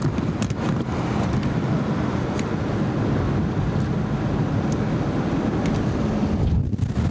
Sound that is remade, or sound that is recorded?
recorded